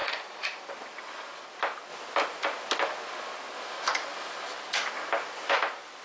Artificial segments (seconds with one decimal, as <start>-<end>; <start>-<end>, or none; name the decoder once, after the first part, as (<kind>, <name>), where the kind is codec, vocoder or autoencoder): 0.0-0.7 (vocoder, Vocos)